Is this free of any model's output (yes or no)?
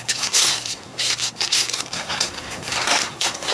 no